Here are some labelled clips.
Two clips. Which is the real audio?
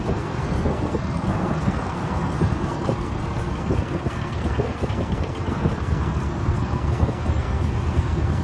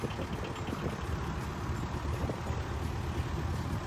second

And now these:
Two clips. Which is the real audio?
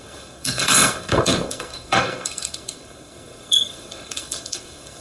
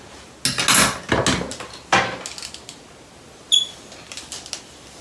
second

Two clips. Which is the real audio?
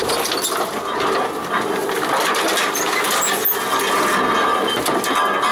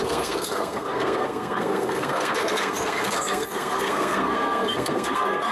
first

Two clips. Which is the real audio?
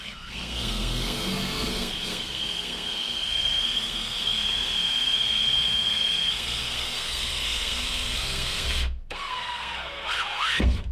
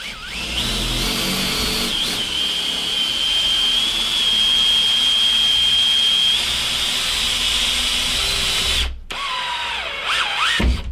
second